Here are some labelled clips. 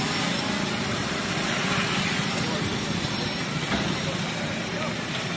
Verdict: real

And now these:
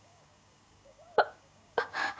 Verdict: fake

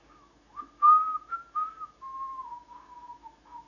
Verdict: fake